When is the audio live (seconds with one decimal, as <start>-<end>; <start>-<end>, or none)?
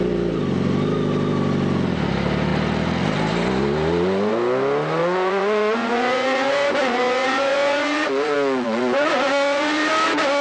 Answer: 0.0-5.0; 9.9-10.4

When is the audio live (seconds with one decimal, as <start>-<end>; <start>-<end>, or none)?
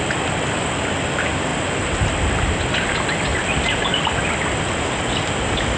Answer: 0.0-5.8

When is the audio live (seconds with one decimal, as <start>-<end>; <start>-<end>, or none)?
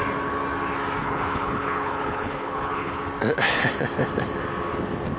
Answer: 0.0-1.0; 3.0-5.2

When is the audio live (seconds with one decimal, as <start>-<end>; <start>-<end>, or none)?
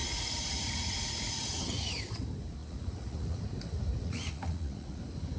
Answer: 1.9-2.6; 3.4-4.0; 5.0-5.4